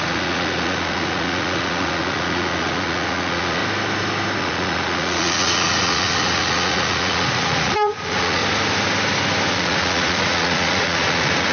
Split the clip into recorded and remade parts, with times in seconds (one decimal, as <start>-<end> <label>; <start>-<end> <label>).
0.0-3.6 remade; 3.6-4.4 recorded; 4.4-8.4 remade; 8.4-9.5 recorded; 9.5-11.5 remade